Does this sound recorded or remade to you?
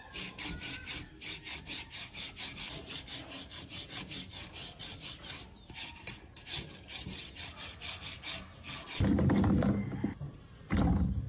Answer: recorded